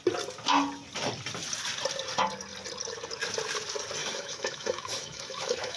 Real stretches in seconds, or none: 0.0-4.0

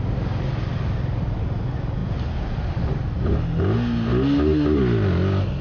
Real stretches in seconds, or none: 0.0-5.6

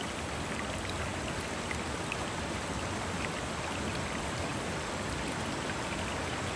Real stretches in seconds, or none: 0.0-4.5; 5.3-6.6

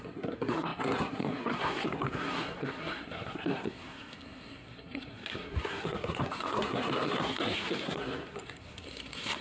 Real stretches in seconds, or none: none

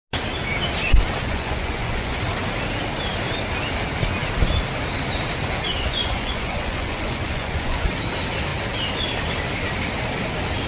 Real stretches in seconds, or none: 0.0-1.2; 2.2-5.7; 7.9-10.7

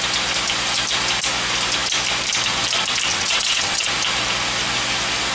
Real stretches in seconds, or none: 0.0-3.1; 3.9-5.3

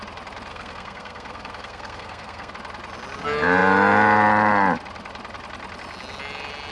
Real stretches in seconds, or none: 0.0-0.5; 2.5-6.7

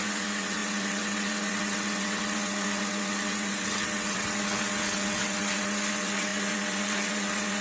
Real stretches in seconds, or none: none